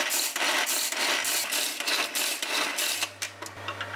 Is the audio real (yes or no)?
yes